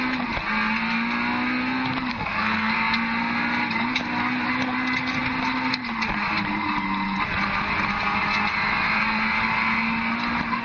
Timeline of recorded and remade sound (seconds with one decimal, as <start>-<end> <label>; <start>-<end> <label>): 0.0-2.1 recorded; 2.1-2.7 remade; 2.7-10.6 recorded